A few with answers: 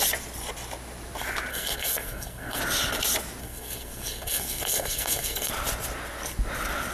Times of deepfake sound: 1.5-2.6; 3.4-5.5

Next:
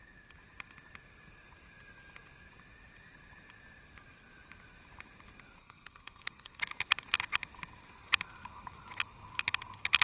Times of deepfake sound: 5.6-6.6

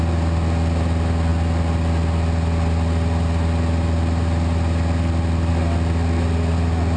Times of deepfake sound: none

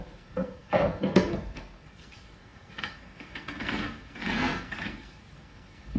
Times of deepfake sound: 0.0-6.0

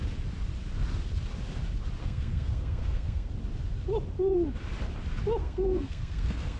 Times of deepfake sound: 2.0-3.3; 5.4-6.6

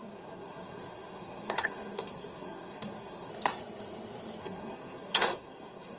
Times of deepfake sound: 0.0-3.3; 4.4-6.0

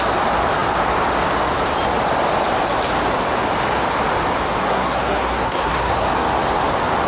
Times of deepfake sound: 4.6-6.1